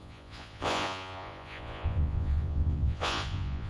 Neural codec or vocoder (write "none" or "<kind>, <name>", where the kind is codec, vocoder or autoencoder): vocoder, Vocos